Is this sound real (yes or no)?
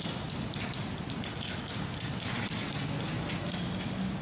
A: yes